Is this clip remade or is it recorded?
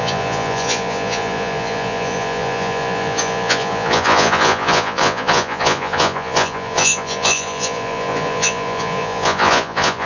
remade